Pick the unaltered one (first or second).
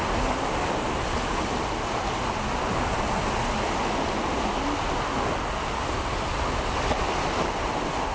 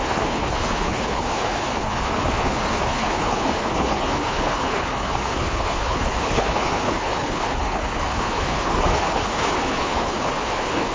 first